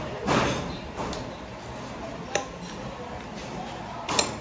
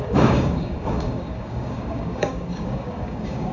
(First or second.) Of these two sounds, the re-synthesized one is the second